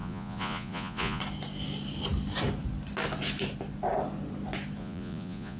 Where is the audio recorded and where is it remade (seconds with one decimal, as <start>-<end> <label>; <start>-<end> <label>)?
0.0-1.2 remade; 1.2-4.8 recorded; 4.8-5.6 remade